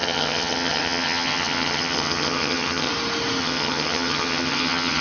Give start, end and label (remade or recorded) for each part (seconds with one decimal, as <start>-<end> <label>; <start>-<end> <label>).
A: 0.0-2.9 remade; 2.9-3.4 recorded; 3.4-5.0 remade